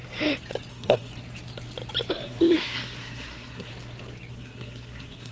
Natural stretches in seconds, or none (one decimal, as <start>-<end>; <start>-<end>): 0.0-0.7; 1.1-2.1; 3.7-4.3